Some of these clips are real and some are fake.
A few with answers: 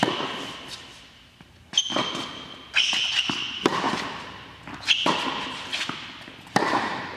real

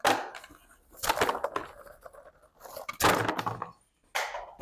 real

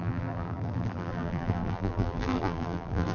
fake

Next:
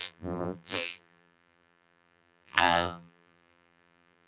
fake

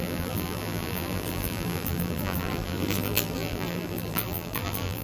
fake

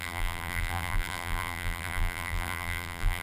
fake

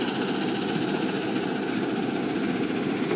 real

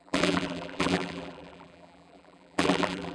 fake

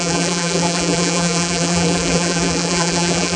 fake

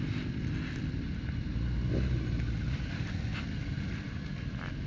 real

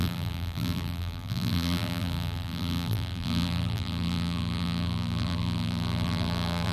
fake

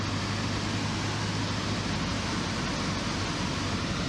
real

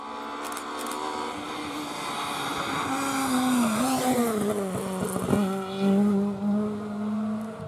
real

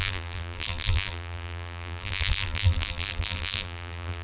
fake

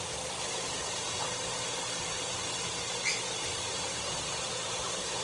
fake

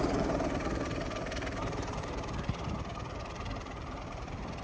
fake